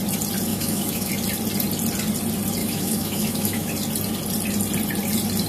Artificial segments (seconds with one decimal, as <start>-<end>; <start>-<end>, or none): 0.5-1.1; 2.6-3.7